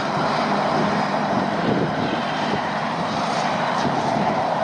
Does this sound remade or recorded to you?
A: remade